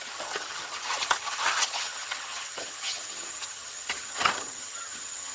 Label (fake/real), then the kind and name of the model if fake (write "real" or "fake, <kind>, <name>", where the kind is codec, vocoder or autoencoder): fake, vocoder, HiFi-GAN